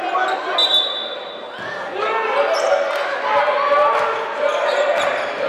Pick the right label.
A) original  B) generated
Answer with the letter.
A